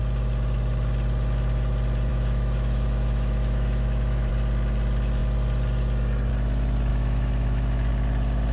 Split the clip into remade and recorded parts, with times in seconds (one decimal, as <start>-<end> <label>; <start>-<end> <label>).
0.0-2.1 recorded; 2.1-4.3 remade; 4.3-6.9 recorded; 6.9-7.9 remade; 7.9-8.5 recorded